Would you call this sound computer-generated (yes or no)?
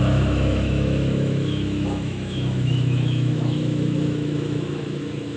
yes